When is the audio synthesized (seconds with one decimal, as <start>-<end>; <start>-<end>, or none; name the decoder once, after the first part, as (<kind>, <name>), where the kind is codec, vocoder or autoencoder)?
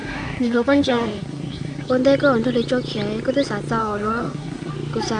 0.0-1.9 (codec, SNAC); 3.8-4.7